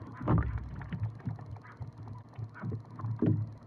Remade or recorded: recorded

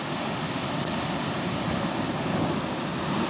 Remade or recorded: recorded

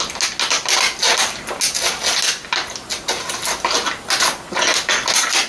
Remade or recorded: recorded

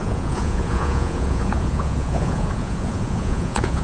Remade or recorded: remade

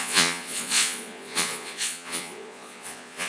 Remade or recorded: remade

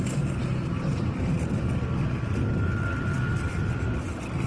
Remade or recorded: recorded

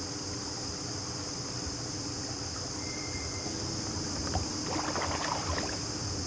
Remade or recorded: recorded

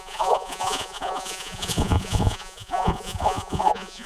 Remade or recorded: remade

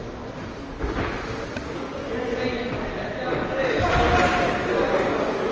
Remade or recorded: recorded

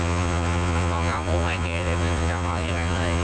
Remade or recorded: remade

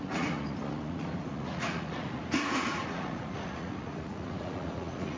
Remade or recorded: remade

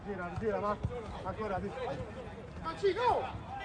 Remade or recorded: recorded